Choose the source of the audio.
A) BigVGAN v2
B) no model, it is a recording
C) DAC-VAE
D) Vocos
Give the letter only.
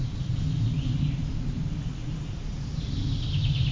B